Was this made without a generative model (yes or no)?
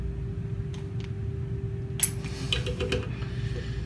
yes